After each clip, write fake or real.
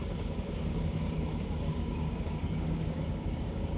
fake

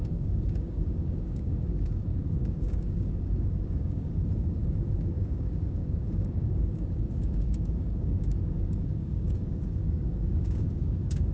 fake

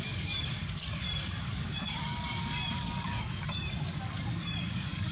fake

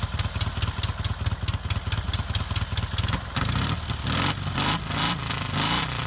real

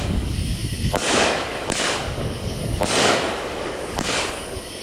fake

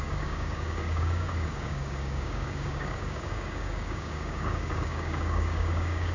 fake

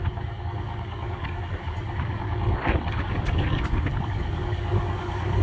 fake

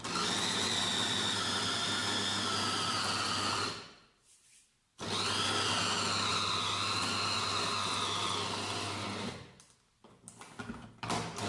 real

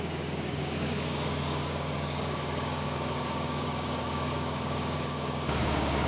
fake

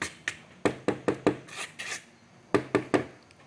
real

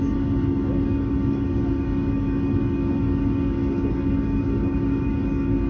fake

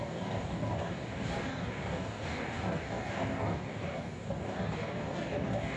fake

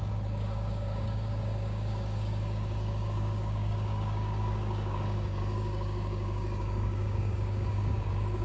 fake